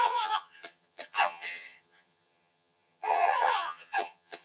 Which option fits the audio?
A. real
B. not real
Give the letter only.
B